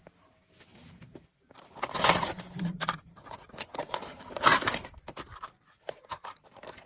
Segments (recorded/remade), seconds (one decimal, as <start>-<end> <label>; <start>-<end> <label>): 0.0-0.7 recorded; 0.7-4.8 remade; 4.8-6.9 recorded